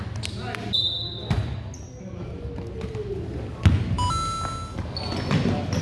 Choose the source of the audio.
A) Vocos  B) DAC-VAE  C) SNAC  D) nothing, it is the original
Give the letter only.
D